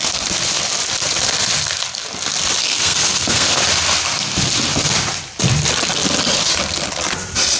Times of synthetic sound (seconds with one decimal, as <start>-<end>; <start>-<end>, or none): 2.7-3.6